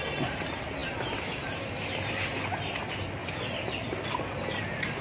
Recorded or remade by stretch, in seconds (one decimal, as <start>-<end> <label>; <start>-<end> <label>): 0.0-5.0 recorded